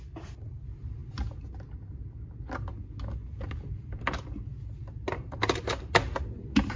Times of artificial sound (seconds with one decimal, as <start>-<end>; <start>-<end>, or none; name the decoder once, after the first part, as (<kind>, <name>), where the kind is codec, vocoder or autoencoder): none